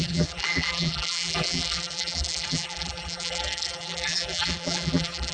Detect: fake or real fake